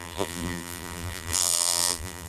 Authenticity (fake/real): fake